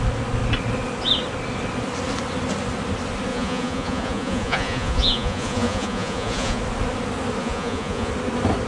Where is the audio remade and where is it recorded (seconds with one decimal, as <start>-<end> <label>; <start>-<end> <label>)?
0.0-3.3 recorded; 3.3-6.6 remade; 6.6-7.4 recorded; 7.4-8.1 remade; 8.1-8.7 recorded